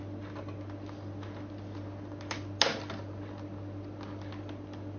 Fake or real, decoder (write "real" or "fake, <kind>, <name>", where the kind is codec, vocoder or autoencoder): real